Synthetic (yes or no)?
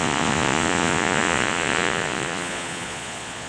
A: yes